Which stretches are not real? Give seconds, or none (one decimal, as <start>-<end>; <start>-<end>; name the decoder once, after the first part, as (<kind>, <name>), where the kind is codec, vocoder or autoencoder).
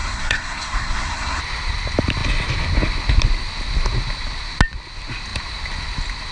0.0-1.4 (codec, SNAC)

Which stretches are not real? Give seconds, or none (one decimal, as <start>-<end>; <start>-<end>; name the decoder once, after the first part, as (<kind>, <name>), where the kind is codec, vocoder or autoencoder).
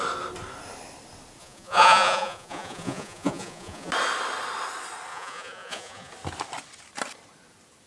1.4-3.9 (vocoder, Vocos); 5.1-6.1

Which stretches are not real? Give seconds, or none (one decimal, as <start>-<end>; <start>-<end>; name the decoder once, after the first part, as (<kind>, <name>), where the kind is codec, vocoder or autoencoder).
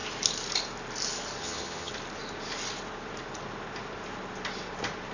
1.4-1.9 (vocoder, HiFi-GAN)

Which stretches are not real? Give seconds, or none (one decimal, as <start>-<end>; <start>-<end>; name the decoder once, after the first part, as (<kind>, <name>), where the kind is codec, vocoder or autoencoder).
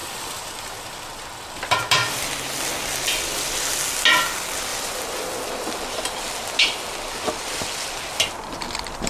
none